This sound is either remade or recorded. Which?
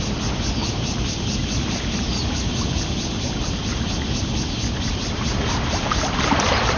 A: recorded